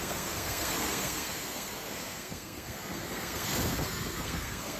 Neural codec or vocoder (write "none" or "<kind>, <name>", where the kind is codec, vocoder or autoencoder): codec, SNAC